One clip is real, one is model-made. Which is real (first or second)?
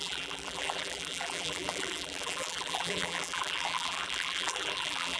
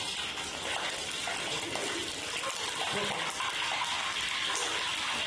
second